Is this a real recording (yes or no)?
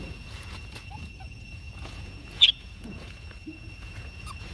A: no